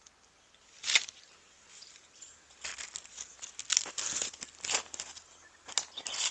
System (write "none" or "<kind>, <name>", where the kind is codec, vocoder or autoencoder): none